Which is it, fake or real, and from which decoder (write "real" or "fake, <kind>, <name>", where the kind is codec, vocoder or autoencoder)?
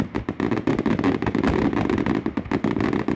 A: real